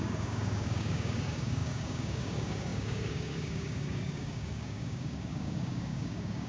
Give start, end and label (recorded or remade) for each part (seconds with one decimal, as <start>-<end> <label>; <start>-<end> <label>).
0.0-6.5 remade

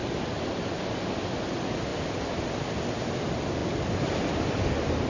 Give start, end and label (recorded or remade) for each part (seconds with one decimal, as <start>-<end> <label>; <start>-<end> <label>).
0.0-5.1 recorded

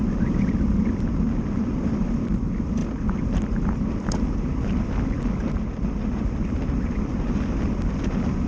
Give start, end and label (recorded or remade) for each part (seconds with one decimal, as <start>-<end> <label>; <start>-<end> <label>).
0.0-8.5 recorded

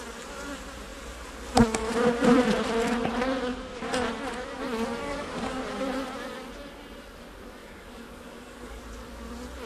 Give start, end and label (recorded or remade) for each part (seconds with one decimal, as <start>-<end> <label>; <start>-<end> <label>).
0.0-5.0 recorded; 5.0-5.6 remade; 5.6-7.6 recorded; 7.6-8.8 remade; 8.8-9.7 recorded

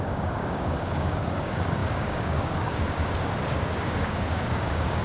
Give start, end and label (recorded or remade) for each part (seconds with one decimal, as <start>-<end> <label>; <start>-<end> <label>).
0.0-5.0 remade

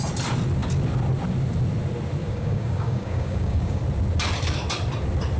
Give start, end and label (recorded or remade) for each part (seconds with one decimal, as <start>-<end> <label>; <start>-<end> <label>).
0.0-2.2 recorded; 2.2-3.8 remade; 3.8-5.4 recorded